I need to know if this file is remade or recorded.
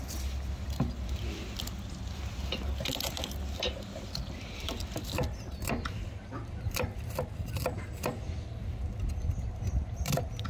recorded